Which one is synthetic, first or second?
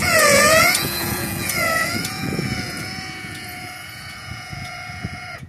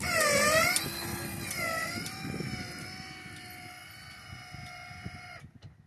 first